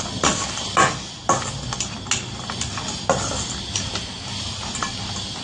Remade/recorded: recorded